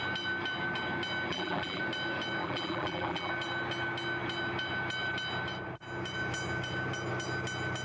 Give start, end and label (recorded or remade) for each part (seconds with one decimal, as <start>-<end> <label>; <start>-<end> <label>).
0.0-1.3 recorded; 1.3-1.8 remade; 1.8-2.4 recorded; 2.4-3.3 remade; 3.3-7.8 recorded